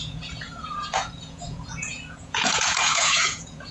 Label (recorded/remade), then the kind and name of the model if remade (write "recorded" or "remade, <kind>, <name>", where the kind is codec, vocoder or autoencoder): remade, vocoder, Vocos